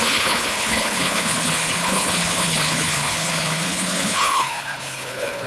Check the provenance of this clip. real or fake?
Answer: fake